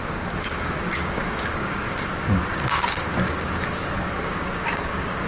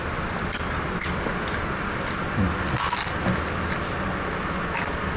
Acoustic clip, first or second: second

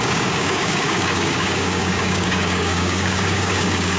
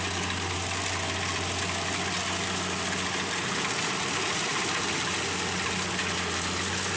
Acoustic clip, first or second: second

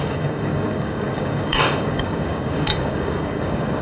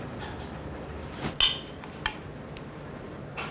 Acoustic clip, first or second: second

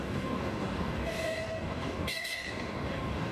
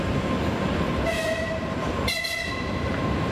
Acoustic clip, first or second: second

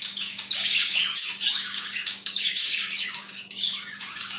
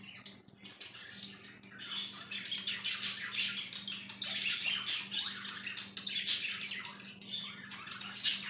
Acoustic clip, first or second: second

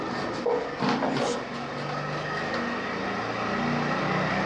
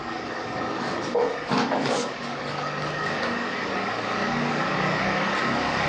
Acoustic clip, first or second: first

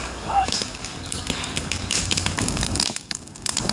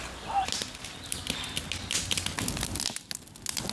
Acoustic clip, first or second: second